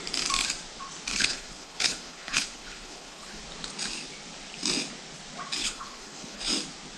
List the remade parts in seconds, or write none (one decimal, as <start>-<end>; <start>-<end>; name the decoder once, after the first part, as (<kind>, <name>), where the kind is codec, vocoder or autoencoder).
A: 1.1-3.4 (codec, HILCodec); 5.6-6.4